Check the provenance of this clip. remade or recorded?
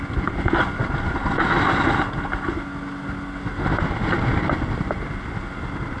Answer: recorded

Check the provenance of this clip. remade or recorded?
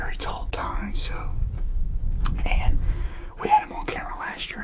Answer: remade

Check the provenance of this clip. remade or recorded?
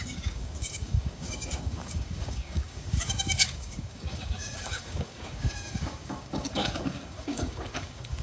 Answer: remade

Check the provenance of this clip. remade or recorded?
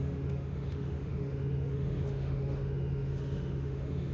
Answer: remade